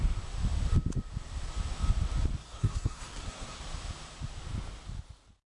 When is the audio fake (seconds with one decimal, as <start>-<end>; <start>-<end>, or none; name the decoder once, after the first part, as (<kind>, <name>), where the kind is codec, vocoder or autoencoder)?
2.4-3.6 (codec, SNAC)